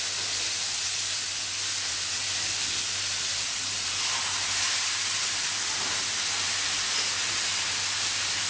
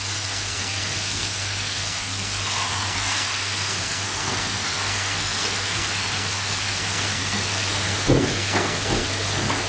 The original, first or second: first